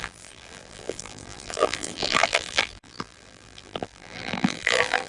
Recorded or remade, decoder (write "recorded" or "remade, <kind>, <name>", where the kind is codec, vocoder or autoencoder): remade, vocoder, BigVGAN v2